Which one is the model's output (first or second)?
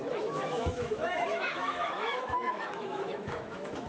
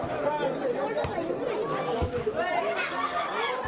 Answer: first